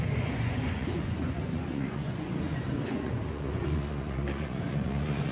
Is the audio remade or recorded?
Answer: remade